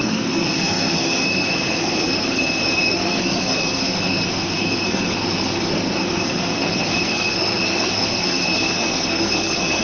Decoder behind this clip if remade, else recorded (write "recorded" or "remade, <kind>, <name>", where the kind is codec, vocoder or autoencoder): remade, codec, SNAC